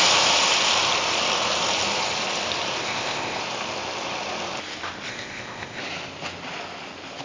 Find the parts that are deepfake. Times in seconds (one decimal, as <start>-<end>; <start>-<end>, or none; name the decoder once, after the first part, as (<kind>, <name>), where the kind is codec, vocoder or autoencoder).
2.8-3.4 (codec, ZipCodec); 5.1-5.8